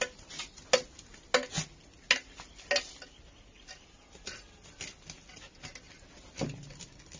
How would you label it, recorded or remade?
recorded